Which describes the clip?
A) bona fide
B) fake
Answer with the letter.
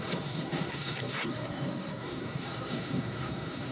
B